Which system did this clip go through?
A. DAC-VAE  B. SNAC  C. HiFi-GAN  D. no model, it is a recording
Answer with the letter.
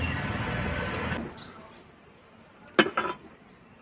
D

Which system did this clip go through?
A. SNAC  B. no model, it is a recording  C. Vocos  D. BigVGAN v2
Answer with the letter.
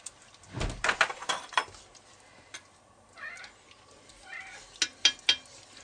B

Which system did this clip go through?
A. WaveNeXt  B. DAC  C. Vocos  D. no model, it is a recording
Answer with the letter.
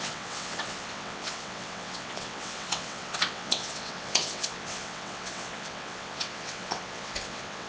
A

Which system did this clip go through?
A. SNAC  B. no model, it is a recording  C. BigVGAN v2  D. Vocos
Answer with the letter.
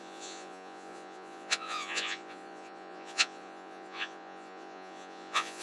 D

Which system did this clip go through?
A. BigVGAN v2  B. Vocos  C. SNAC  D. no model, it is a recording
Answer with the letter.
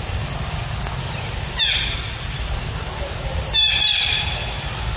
D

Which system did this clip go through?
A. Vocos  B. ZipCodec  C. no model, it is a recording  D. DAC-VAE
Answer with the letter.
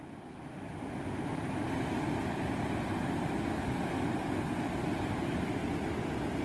C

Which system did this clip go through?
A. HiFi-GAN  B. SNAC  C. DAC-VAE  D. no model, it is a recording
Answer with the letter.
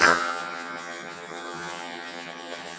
A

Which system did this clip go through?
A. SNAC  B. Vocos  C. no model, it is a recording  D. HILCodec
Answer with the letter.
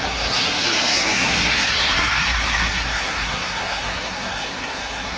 A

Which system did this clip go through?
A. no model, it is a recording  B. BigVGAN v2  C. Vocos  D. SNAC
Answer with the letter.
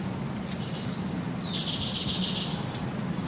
A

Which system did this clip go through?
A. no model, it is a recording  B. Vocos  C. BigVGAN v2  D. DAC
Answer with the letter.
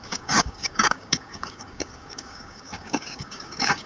D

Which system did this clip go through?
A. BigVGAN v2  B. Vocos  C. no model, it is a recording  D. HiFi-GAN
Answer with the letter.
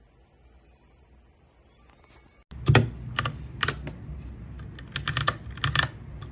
C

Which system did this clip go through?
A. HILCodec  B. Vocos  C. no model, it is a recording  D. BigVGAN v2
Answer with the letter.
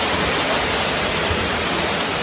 C